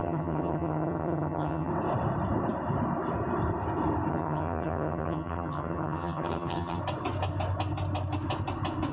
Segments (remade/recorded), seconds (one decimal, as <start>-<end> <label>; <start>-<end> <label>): 0.0-1.7 remade; 1.7-4.1 recorded; 4.1-6.8 remade; 6.8-8.9 recorded